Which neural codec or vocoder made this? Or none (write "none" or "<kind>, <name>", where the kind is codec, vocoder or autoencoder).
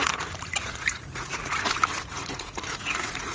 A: vocoder, Vocos